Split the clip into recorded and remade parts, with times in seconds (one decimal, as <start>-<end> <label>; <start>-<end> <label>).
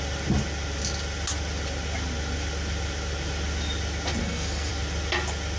0.0-4.2 recorded; 4.2-4.7 remade; 4.7-5.6 recorded